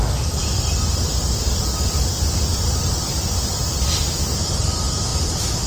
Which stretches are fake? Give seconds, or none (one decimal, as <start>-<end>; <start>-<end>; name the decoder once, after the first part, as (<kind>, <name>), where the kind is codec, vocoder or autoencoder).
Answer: none